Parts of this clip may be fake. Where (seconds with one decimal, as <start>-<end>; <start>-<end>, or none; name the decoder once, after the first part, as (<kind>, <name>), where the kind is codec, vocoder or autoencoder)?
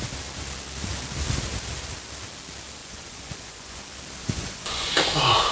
2.8-3.8 (vocoder, Vocos); 4.2-4.9